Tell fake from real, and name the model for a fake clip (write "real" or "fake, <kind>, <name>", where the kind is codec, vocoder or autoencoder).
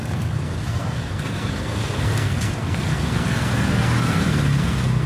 fake, codec, SNAC